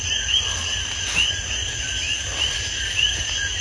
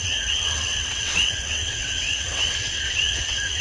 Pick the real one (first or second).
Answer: first